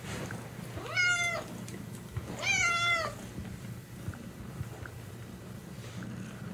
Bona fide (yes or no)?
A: yes